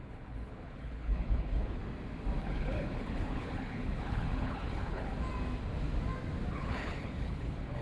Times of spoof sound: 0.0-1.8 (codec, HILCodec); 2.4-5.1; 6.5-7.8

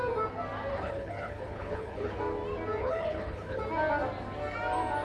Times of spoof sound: 0.7-2.1 (codec, HILCodec); 2.8-3.6

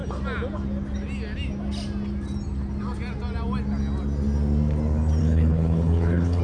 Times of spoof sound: 5.2-6.4 (codec, HILCodec)